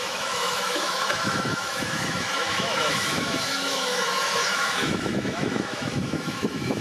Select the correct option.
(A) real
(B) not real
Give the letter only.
B